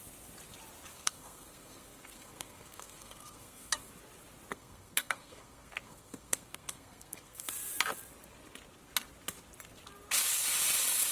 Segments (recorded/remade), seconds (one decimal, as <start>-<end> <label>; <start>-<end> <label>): 0.0-0.9 recorded; 0.9-3.9 remade; 3.9-4.5 recorded; 4.5-7.5 remade; 7.5-11.1 recorded